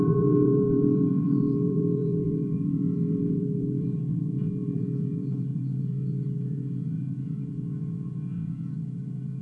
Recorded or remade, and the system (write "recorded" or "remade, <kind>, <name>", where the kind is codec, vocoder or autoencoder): remade, vocoder, Vocos